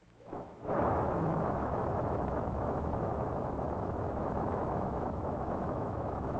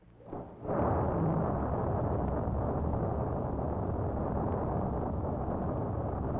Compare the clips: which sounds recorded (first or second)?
second